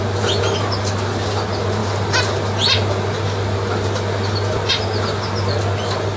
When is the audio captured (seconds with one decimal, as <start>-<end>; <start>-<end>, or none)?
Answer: 0.0-6.2